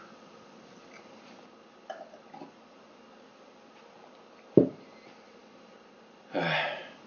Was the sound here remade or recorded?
recorded